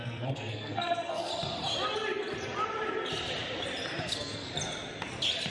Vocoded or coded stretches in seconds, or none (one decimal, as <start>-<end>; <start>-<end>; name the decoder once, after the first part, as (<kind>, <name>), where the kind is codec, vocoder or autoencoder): 0.0-1.3 (codec, SNAC); 4.0-4.5